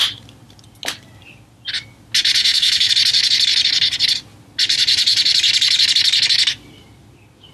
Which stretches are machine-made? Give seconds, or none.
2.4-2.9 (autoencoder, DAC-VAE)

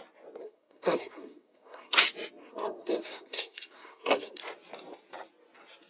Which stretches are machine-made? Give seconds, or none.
0.4-2.0 (codec, SNAC); 2.4-4.4

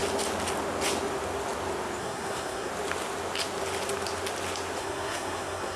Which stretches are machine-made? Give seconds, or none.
2.0-2.7 (codec, SNAC); 4.8-5.8

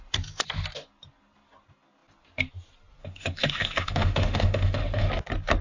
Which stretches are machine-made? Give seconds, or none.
3.0-5.1 (autoencoder, DAC-VAE)

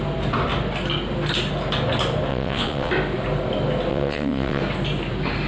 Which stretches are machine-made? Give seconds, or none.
2.3-2.9 (vocoder, WaveNeXt); 3.9-4.6

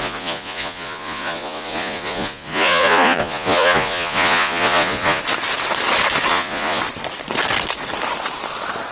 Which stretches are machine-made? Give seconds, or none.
0.0-5.2 (vocoder, Vocos); 6.3-6.8

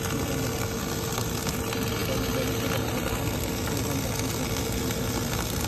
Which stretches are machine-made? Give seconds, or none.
none